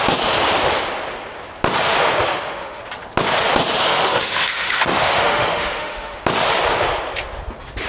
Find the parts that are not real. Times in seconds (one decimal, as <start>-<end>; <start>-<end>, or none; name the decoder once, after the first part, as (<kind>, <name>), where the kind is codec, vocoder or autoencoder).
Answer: 2.3-2.8 (autoencoder, DAC-VAE); 3.8-6.2